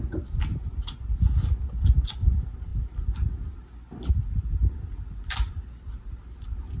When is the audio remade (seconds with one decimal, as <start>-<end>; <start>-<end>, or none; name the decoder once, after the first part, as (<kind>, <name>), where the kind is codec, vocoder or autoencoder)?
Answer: none